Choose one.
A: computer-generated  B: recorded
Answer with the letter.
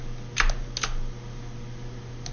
B